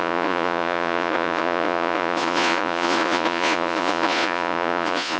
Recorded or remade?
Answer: remade